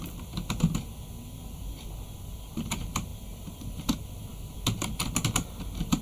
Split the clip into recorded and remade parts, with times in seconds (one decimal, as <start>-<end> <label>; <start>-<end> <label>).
0.0-6.0 recorded